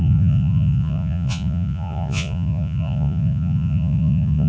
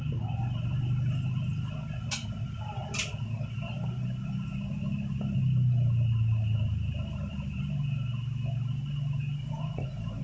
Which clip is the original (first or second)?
second